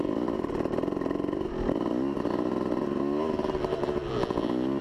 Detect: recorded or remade recorded